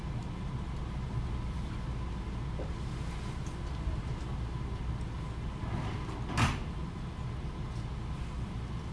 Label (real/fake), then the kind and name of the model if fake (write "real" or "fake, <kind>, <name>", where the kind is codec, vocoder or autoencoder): real